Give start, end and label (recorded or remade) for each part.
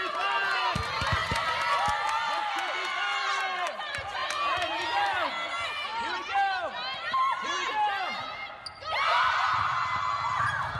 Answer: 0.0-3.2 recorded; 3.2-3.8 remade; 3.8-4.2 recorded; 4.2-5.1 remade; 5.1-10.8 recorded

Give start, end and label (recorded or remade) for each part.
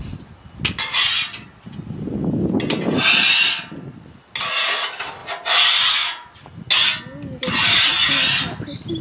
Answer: 0.0-9.0 recorded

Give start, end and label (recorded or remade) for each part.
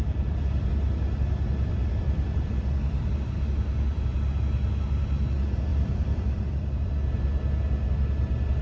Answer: 0.0-1.7 recorded; 1.7-3.1 remade; 3.1-5.7 recorded; 5.7-6.9 remade; 6.9-8.6 recorded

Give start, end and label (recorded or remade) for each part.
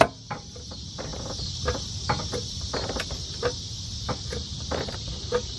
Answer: 0.0-5.6 remade